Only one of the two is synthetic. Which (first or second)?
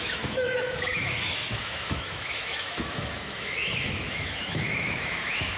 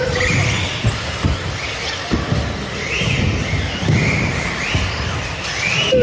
first